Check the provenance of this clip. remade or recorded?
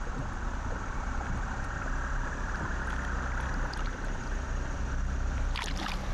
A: recorded